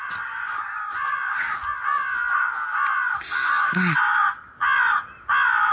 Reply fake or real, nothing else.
real